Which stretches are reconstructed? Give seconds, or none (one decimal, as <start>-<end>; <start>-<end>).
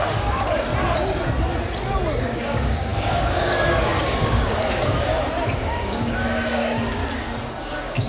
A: 0.0-0.7; 2.2-5.1; 5.6-7.0; 7.5-8.1